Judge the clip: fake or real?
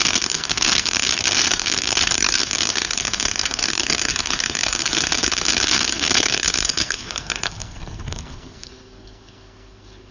fake